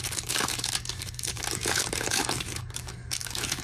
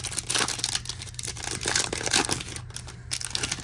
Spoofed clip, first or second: first